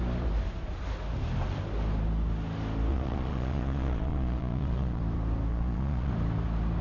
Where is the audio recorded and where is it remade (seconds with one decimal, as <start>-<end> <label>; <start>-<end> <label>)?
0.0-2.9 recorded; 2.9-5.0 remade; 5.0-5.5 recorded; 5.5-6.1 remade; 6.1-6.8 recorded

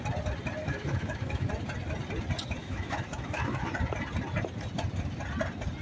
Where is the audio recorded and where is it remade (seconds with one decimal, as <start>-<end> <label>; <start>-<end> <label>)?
0.0-0.6 recorded; 0.6-1.5 remade; 1.5-2.6 recorded; 2.6-3.7 remade; 3.7-5.8 recorded

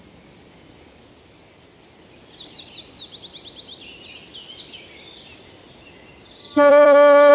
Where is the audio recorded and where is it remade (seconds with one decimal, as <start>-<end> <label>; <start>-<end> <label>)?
0.0-6.4 recorded; 6.4-7.3 remade

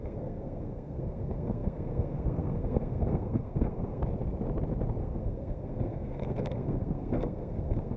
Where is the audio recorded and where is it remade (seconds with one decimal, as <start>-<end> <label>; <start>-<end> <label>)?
0.0-4.0 remade; 4.0-5.0 recorded; 5.0-8.0 remade

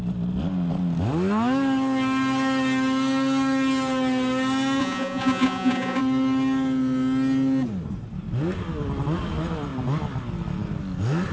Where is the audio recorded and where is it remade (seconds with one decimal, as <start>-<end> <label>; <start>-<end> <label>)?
0.0-4.8 recorded; 4.8-6.0 remade; 6.0-11.3 recorded

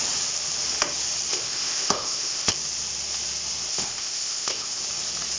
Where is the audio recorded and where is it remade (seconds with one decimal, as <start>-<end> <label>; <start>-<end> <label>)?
0.0-1.3 recorded; 1.3-2.5 remade; 2.5-3.7 recorded; 3.7-4.8 remade; 4.8-5.4 recorded